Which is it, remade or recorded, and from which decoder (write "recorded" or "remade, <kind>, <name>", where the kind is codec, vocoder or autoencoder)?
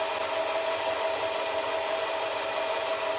recorded